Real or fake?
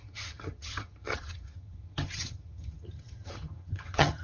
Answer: fake